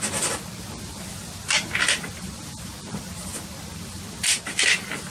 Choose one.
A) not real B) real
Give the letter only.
B